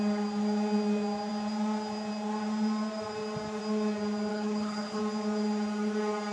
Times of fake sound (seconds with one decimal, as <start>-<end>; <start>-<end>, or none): 4.3-5.0